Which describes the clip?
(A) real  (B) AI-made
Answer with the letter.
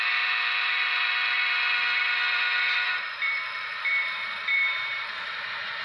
B